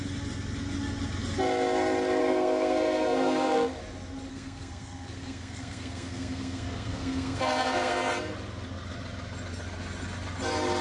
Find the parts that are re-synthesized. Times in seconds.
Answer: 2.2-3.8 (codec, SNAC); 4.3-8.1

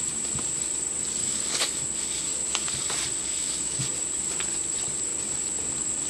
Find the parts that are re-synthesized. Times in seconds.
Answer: 1.2-1.8 (codec, DAC); 3.2-3.8

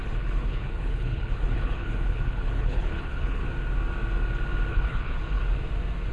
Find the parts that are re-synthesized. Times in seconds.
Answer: 0.0-3.4 (codec, HILCodec); 4.7-5.4